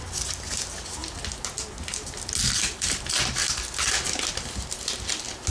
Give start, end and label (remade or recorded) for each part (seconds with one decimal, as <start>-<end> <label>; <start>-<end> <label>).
0.0-5.5 recorded